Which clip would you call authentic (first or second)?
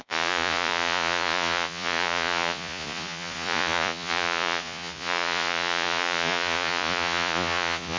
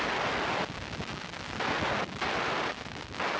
second